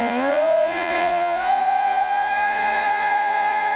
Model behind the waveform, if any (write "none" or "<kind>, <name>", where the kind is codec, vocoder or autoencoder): vocoder, Vocos